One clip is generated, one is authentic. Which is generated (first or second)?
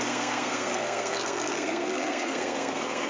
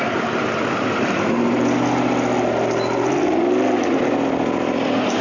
first